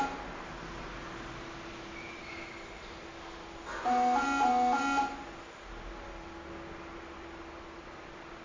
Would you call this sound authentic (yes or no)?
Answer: yes